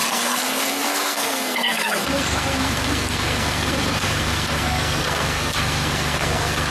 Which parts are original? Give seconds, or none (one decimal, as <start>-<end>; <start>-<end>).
none